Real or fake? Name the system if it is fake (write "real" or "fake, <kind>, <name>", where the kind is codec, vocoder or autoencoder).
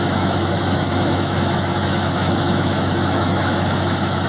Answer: fake, autoencoder, DAC-VAE